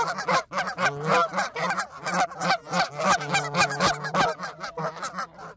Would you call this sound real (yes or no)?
yes